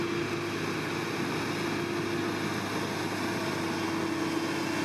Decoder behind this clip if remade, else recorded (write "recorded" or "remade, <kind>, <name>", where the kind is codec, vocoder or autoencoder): recorded